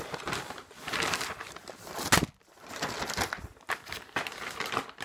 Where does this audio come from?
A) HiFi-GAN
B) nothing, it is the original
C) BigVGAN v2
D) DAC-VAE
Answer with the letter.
B